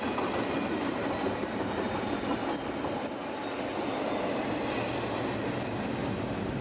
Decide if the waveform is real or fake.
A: real